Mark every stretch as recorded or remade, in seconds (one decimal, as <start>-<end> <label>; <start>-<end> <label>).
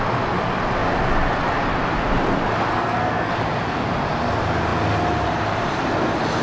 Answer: 0.0-2.7 recorded; 2.7-3.3 remade; 3.3-6.4 recorded